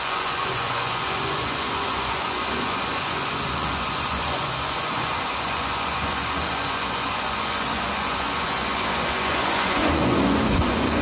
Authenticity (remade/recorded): remade